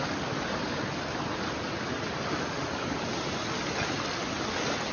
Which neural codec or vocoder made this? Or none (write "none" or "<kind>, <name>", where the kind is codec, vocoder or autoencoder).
none